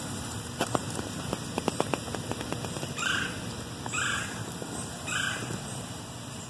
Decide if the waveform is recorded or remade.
remade